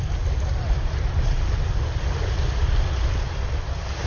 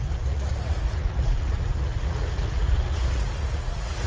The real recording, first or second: first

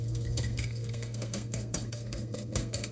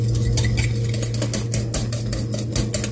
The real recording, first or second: second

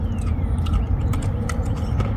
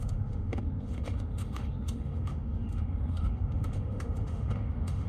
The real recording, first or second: first